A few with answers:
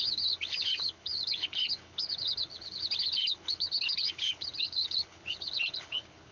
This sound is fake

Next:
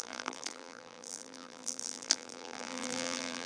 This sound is fake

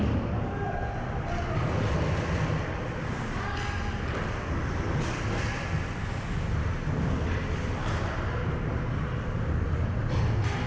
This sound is real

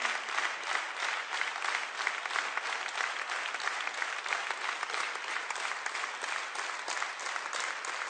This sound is real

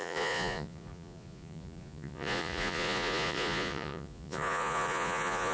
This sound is fake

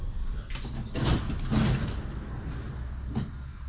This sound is real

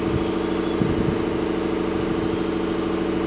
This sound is real